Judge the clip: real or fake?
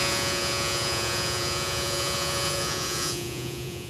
fake